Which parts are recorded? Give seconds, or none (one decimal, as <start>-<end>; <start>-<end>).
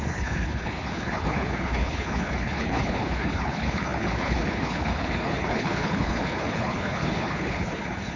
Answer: none